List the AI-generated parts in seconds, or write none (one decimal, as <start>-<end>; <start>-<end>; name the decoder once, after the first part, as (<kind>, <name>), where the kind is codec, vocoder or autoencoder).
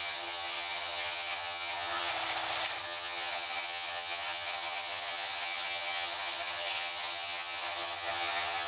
0.0-2.1 (vocoder, HiFi-GAN); 2.8-8.7